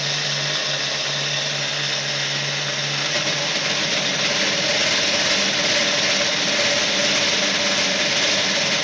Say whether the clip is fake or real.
real